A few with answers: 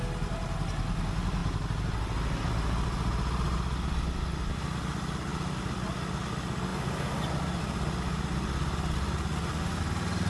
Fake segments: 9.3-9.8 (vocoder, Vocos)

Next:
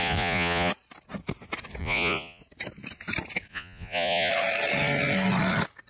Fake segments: 0.0-0.7 (vocoder, Vocos); 1.8-2.4; 3.5-4.3

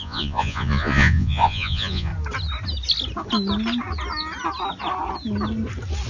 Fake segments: 0.0-2.1 (vocoder, Vocos)

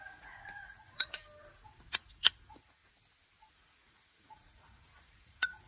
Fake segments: 0.0-1.2 (vocoder, Vocos); 1.9-2.8; 3.5-5.7

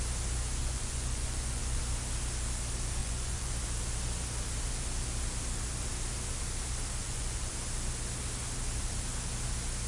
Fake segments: 0.6-1.8 (vocoder, Vocos); 3.0-3.5; 7.0-7.5

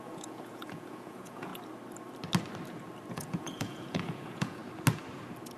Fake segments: 0.0-1.5 (vocoder, Vocos); 3.1-4.6

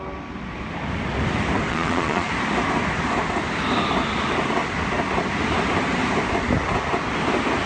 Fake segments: 1.7-2.3 (vocoder, Vocos)

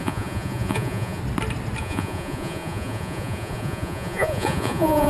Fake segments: 0.0-1.2 (vocoder, Vocos); 1.8-5.1